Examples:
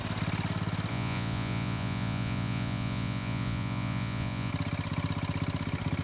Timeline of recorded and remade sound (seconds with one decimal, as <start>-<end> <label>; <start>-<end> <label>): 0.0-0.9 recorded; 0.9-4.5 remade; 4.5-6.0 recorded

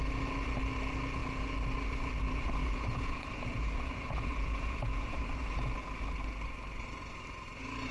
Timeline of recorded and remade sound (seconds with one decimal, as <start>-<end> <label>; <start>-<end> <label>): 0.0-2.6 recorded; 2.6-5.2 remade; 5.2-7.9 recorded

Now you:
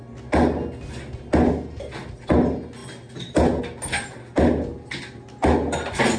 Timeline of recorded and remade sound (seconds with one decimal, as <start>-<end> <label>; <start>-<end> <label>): 0.0-6.2 recorded

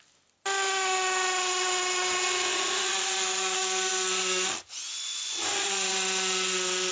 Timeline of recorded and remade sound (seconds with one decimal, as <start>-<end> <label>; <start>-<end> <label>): 0.0-2.5 recorded; 2.5-3.9 remade; 3.9-4.6 recorded; 4.6-5.9 remade; 5.9-6.9 recorded

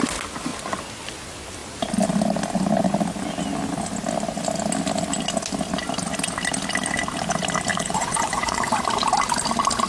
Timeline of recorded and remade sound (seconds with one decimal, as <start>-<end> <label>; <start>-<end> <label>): 0.0-7.7 recorded; 7.7-8.7 remade; 8.7-9.9 recorded

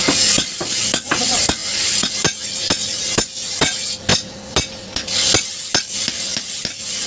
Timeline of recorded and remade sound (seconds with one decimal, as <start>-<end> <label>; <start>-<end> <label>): 0.0-1.6 recorded; 1.6-2.1 remade; 2.1-7.1 recorded